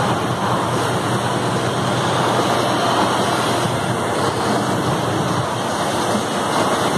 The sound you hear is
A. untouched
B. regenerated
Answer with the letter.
A